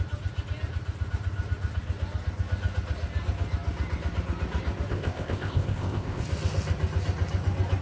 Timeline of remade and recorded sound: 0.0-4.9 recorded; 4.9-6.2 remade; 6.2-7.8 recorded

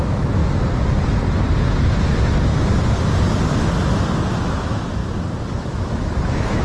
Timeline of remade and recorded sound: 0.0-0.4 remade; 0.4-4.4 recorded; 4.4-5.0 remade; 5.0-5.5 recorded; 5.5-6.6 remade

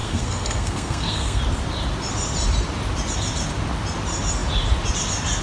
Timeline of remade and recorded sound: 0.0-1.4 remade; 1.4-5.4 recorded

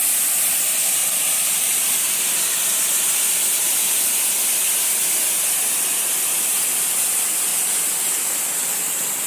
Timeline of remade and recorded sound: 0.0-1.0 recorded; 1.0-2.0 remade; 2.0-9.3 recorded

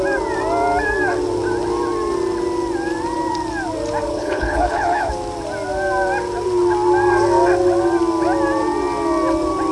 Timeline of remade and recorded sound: 0.0-4.1 recorded; 4.1-5.1 remade; 5.1-9.7 recorded